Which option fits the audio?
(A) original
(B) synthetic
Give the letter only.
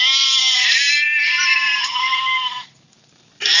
B